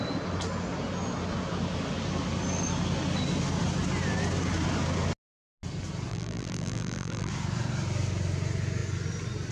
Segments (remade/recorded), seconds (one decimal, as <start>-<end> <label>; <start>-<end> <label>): 0.0-6.1 recorded; 6.1-7.3 remade; 7.3-9.5 recorded